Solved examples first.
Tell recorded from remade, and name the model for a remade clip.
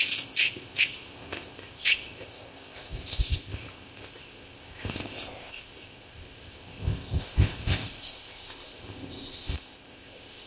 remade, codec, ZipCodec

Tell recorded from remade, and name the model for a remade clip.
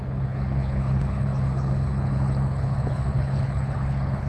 remade, codec, HILCodec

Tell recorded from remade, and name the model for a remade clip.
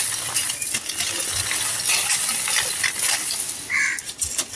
recorded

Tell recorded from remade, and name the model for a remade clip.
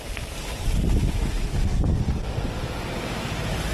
remade, vocoder, BigVGAN v2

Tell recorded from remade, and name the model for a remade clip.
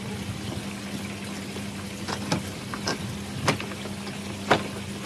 recorded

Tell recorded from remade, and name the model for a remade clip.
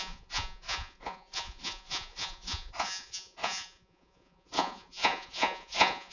remade, vocoder, Vocos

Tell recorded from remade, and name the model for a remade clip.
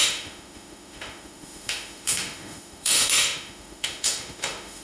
remade, autoencoder, DAC-VAE